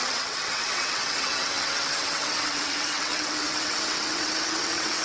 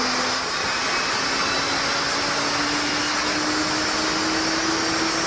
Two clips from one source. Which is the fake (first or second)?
first